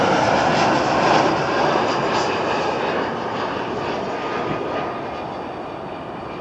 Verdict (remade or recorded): recorded